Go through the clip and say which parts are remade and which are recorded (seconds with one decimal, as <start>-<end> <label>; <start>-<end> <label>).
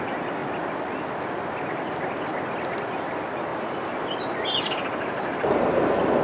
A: 0.0-6.2 recorded